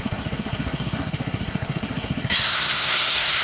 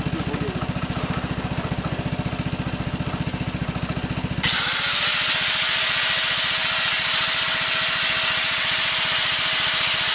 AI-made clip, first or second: first